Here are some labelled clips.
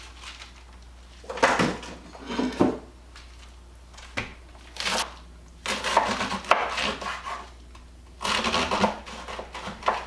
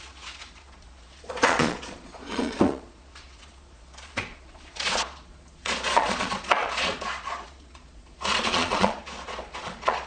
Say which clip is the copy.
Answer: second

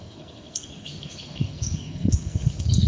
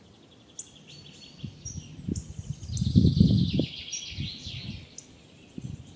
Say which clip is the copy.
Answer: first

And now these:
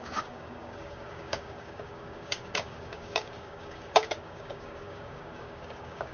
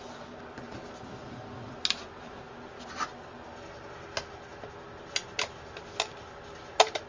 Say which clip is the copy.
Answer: first